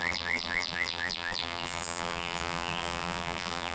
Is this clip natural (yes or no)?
no